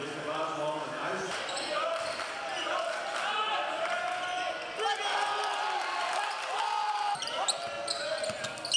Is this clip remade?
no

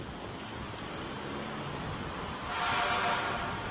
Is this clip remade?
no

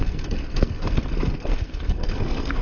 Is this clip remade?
yes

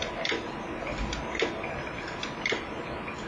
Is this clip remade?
no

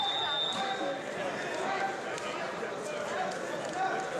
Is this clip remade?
no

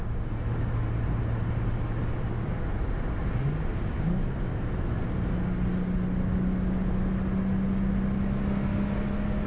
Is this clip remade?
no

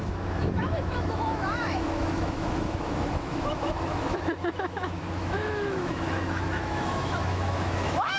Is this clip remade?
yes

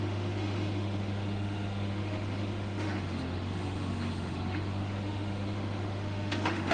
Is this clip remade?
yes